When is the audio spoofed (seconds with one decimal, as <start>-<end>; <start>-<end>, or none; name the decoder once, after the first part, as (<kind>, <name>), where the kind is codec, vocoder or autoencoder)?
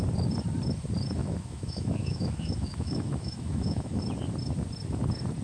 1.2-4.0 (autoencoder, DAC-VAE)